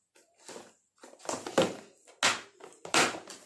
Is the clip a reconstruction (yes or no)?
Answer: no